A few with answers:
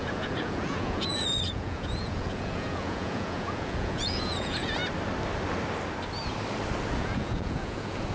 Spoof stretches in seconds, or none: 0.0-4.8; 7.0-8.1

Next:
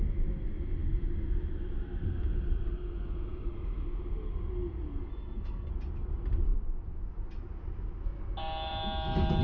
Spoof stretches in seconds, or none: 5.1-5.7

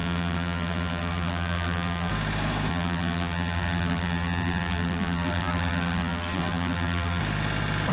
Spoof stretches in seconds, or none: 0.0-2.1; 2.7-7.2

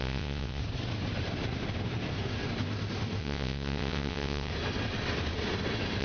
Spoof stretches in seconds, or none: 0.0-0.6; 3.2-4.5

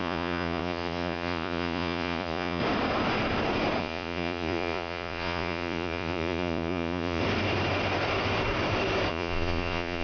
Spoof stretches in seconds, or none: 0.0-2.6; 3.8-7.2; 9.1-10.0

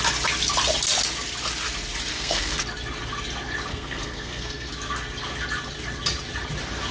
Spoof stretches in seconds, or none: 2.1-2.6; 3.7-4.7

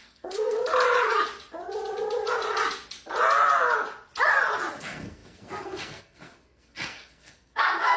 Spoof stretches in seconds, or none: 0.0-0.6; 4.8-8.0